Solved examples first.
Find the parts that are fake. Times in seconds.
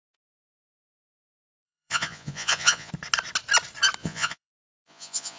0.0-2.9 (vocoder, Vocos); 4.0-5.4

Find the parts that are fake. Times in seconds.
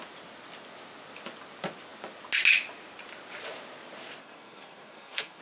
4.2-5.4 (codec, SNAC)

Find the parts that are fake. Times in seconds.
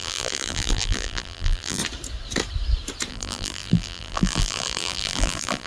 0.0-1.8 (vocoder, BigVGAN v2); 3.1-5.7